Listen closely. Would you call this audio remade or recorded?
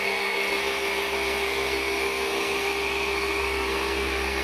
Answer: remade